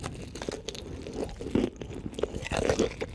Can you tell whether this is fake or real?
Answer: real